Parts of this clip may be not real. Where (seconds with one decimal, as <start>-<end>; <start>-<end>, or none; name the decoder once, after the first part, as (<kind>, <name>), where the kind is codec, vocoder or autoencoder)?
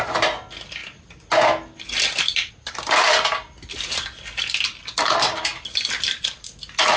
none